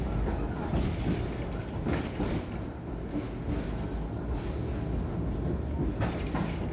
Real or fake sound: real